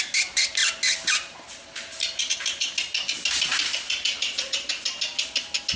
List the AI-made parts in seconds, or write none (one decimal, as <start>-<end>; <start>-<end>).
none